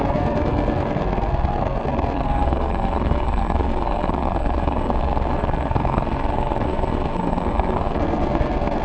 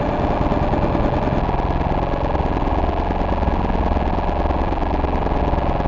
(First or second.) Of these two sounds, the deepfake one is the first